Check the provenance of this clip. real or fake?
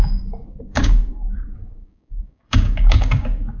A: fake